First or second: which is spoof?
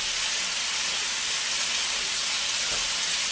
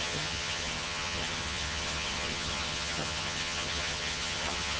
second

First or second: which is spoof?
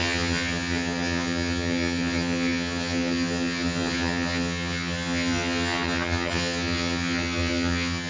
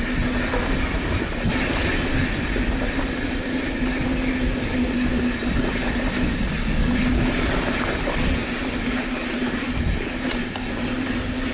first